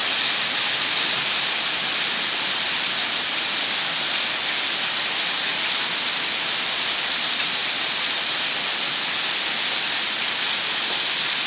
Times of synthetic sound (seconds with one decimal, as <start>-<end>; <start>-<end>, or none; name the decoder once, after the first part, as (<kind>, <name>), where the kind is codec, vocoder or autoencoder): none